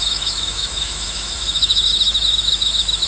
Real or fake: fake